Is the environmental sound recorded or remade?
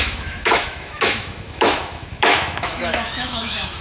remade